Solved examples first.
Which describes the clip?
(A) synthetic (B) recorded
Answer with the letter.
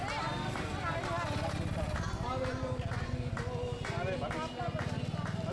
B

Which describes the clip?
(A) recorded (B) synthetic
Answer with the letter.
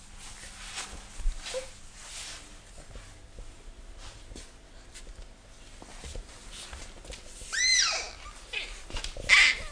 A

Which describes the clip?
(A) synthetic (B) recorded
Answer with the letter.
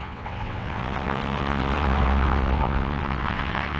A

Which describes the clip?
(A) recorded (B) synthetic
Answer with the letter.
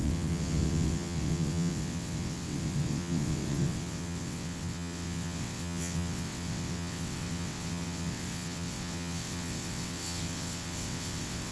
B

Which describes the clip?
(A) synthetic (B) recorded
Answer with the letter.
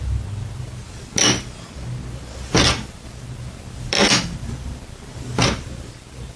B